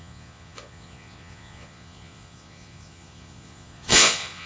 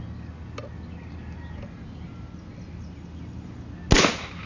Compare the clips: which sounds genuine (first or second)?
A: second